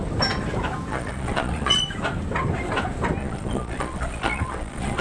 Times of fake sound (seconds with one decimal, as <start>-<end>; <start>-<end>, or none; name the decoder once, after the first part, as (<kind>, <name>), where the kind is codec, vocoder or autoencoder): 0.9-1.8 (vocoder, Vocos); 3.2-5.0

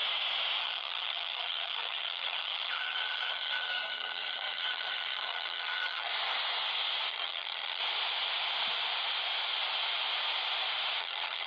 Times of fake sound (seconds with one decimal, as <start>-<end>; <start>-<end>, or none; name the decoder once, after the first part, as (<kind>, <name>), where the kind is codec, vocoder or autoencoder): 0.6-6.1 (vocoder, HiFi-GAN); 7.1-7.8; 11.0-11.5

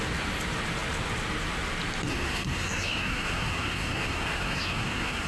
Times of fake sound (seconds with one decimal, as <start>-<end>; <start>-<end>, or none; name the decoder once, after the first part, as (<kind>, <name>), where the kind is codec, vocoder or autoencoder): 2.1-5.3 (codec, SNAC)

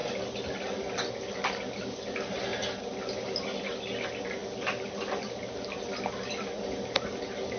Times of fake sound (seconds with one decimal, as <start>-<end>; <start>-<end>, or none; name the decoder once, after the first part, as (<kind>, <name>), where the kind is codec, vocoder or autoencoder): none